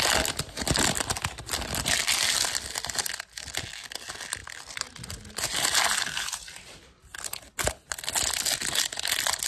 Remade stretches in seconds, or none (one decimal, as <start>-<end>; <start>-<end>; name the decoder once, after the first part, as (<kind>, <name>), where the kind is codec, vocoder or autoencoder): none